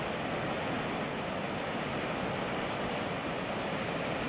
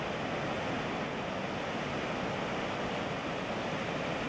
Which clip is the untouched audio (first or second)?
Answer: second